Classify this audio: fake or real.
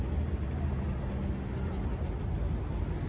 real